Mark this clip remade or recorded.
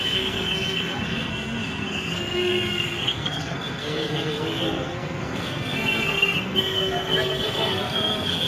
remade